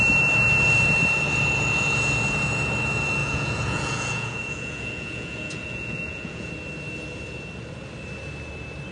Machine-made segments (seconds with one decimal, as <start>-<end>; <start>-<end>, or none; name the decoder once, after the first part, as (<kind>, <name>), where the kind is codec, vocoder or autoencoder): 3.2-6.5 (vocoder, Vocos)